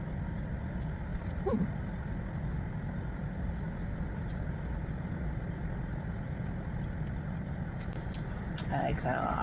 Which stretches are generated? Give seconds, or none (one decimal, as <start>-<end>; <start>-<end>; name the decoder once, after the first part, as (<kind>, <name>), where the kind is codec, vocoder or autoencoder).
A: none